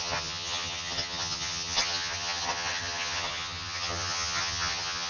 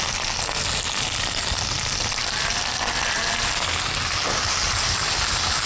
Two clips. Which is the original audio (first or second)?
second